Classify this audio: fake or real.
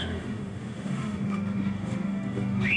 fake